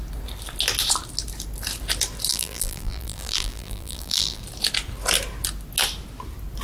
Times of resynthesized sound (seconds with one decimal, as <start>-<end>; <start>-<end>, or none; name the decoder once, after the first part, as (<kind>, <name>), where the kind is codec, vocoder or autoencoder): 2.3-4.4 (vocoder, BigVGAN v2)